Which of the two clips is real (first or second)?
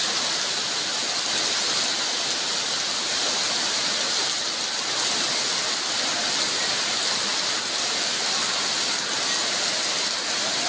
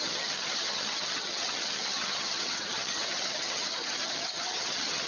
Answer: first